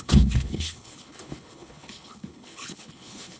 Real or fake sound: fake